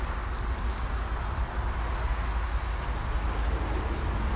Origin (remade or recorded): recorded